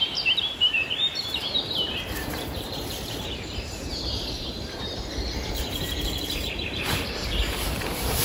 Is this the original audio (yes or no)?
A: no